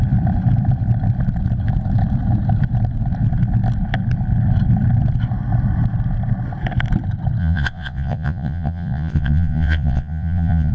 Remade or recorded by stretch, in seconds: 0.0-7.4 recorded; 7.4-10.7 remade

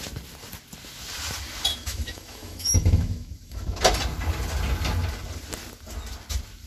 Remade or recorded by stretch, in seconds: 0.0-1.7 recorded; 1.7-3.8 remade; 3.8-6.7 recorded

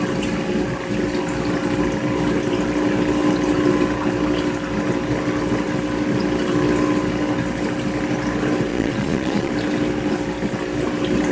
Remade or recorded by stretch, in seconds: 0.0-8.7 recorded; 8.7-9.5 remade; 9.5-11.3 recorded